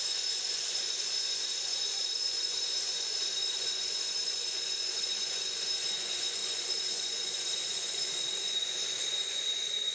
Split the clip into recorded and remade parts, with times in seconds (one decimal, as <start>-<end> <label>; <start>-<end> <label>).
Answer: 0.0-9.9 remade